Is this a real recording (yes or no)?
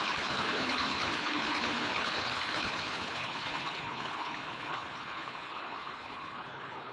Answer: no